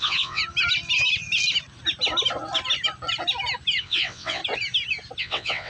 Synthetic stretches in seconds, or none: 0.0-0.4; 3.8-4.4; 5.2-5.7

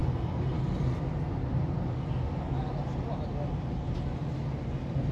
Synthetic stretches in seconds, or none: none

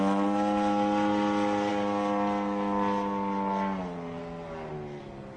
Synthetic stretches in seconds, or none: none